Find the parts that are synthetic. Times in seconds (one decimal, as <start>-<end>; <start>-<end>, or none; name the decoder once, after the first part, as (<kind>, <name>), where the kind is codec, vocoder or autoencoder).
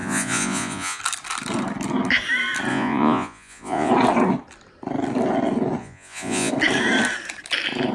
0.0-1.0 (vocoder, Vocos); 2.7-3.9; 5.8-6.5